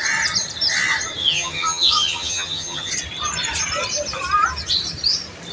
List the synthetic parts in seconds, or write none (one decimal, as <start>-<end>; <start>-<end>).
1.2-2.9